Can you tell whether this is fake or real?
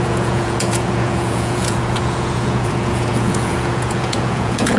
fake